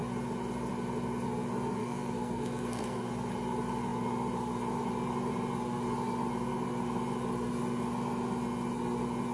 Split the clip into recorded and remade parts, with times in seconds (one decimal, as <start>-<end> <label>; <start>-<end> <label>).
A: 0.0-1.8 recorded; 1.8-3.1 remade; 3.1-9.3 recorded